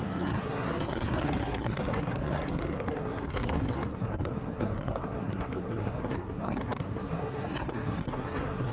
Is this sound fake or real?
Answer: fake